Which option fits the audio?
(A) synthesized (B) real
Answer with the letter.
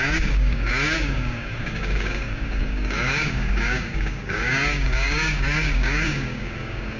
A